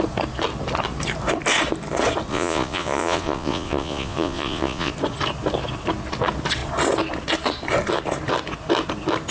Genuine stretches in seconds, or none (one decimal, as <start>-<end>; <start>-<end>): 0.0-2.3; 4.9-9.3